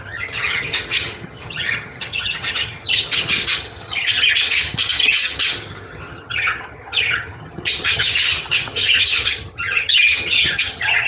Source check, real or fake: fake